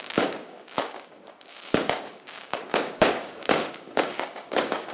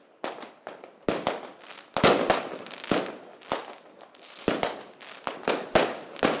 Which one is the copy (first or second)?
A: first